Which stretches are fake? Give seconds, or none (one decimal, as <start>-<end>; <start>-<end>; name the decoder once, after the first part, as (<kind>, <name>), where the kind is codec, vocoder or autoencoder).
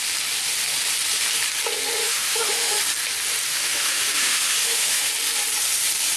2.0-2.8 (autoencoder, DAC-VAE); 3.5-5.1